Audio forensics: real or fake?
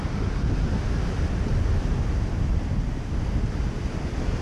real